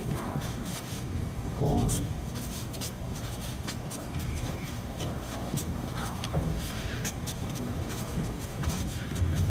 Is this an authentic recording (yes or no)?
no